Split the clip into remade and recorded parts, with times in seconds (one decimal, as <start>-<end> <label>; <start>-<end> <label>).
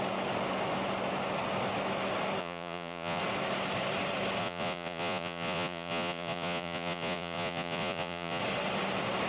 0.0-2.4 recorded; 2.4-3.2 remade; 3.2-4.4 recorded; 4.4-8.4 remade; 8.4-9.3 recorded